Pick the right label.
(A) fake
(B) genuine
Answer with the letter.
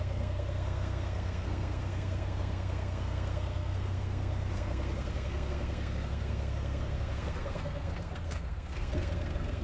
A